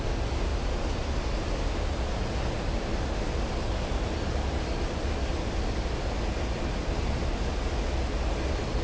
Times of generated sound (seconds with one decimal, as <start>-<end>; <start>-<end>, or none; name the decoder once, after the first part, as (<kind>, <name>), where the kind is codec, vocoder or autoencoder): none